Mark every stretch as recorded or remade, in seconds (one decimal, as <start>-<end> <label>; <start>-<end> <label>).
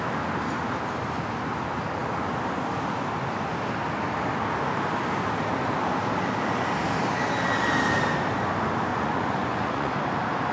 0.0-8.9 recorded; 8.9-9.9 remade; 9.9-10.5 recorded